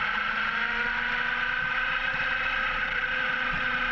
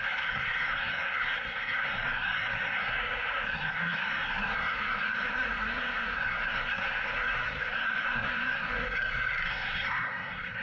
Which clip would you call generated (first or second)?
second